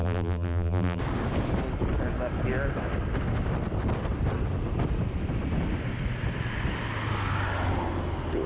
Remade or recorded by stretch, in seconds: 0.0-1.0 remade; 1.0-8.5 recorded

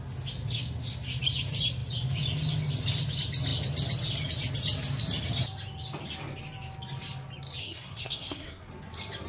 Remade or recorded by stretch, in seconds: 0.0-7.6 recorded; 7.6-8.7 remade; 8.7-9.3 recorded

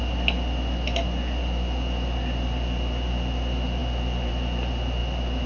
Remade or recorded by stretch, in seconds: 0.0-5.5 recorded

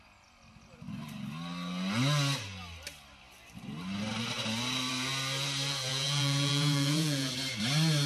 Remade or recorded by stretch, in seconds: 0.0-5.9 recorded; 5.9-7.3 remade; 7.3-8.1 recorded

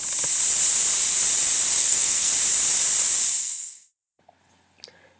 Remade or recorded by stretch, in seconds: 0.0-1.8 recorded; 1.8-2.3 remade; 2.3-3.4 recorded; 3.4-4.2 remade; 4.2-5.2 recorded

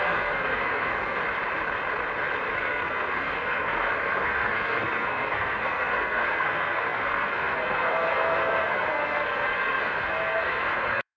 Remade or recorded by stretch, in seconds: 0.0-1.2 remade; 1.2-2.5 recorded; 2.5-11.2 remade